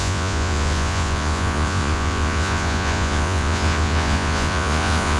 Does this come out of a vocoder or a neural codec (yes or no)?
yes